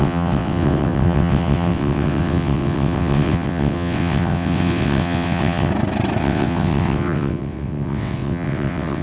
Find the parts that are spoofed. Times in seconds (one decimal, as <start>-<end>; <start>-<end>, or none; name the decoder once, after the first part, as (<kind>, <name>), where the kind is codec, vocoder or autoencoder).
0.0-5.7 (vocoder, WaveNeXt); 6.2-9.0